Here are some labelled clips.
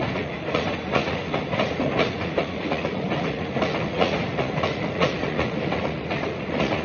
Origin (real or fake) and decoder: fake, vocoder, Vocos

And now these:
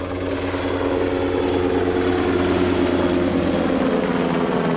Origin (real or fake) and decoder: real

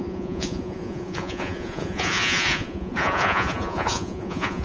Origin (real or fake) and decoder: fake, vocoder, Vocos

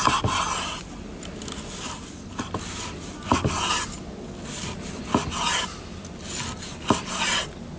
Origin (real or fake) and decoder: real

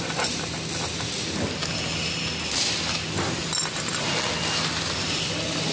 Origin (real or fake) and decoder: real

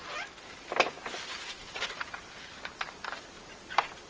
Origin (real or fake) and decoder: real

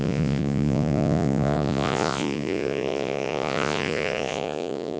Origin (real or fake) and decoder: fake, vocoder, Vocos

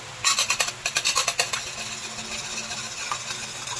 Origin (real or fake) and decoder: real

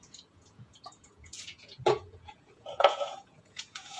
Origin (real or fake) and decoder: fake, vocoder, Vocos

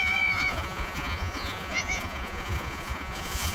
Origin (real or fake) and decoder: fake, vocoder, Vocos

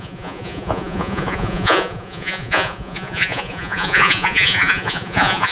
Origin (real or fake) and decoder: fake, vocoder, Vocos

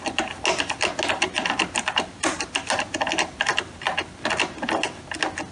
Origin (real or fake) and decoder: real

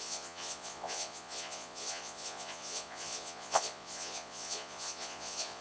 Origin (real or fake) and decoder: fake, vocoder, Vocos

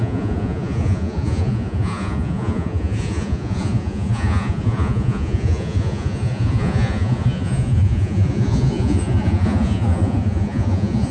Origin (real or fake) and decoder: fake, vocoder, Vocos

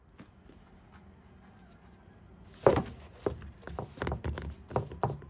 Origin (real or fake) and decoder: real